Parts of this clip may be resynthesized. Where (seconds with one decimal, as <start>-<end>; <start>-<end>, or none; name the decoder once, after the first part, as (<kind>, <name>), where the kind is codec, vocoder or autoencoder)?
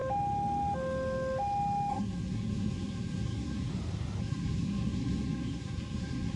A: 1.9-3.7 (codec, SNAC); 4.2-6.4